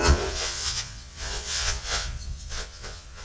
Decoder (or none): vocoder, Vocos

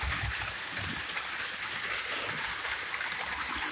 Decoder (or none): none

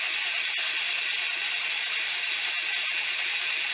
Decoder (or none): none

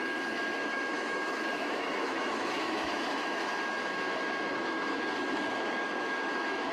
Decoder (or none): autoencoder, DAC-VAE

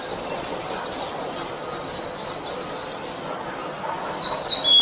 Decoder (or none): none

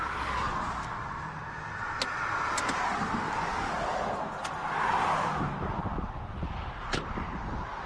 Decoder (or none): none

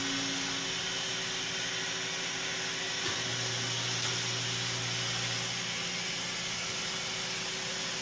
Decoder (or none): none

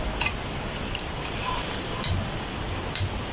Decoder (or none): none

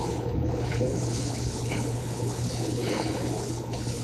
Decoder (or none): codec, HILCodec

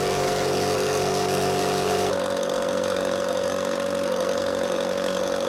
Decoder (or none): codec, SNAC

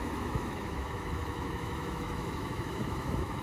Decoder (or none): autoencoder, DAC-VAE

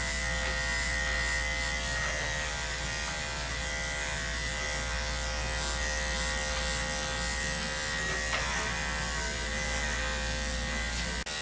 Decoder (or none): none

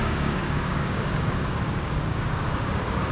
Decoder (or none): codec, DAC